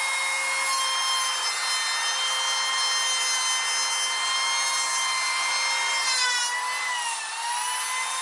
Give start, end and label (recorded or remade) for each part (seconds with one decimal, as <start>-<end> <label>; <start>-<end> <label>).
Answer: 0.0-8.2 recorded